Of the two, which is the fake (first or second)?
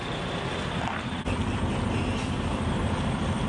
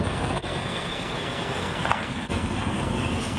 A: second